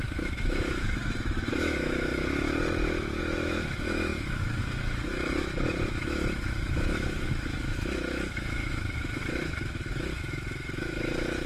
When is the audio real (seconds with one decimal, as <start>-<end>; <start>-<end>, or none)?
none